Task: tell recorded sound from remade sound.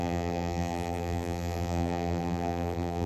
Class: remade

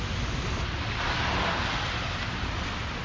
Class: recorded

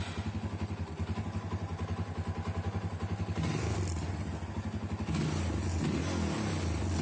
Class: recorded